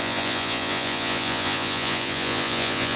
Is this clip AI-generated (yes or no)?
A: yes